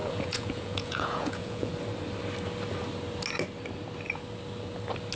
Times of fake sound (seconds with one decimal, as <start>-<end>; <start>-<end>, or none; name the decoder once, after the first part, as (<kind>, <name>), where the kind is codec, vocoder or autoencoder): 0.0-1.7 (vocoder, Vocos)